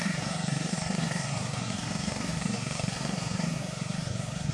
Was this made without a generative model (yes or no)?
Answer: no